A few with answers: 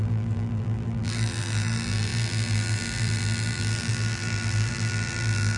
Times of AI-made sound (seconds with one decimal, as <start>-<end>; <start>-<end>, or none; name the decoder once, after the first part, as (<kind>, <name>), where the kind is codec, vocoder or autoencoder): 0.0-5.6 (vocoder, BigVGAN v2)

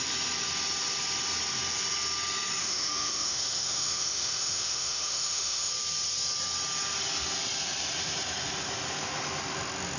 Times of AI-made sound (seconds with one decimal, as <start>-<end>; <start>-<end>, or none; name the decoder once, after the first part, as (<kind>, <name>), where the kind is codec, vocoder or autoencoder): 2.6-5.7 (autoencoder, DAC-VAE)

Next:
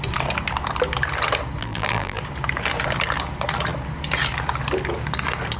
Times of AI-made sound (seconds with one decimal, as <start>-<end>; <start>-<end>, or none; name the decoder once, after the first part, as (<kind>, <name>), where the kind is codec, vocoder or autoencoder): 1.6-2.2 (vocoder, BigVGAN v2)